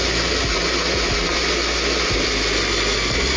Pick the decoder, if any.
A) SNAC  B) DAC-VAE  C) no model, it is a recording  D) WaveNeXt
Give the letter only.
C